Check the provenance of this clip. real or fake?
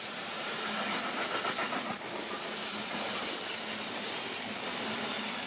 real